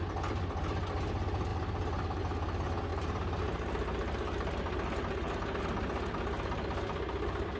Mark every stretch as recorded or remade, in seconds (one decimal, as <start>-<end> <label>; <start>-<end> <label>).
0.0-1.5 recorded; 1.5-2.2 remade; 2.2-2.9 recorded; 2.9-5.6 remade; 5.6-7.6 recorded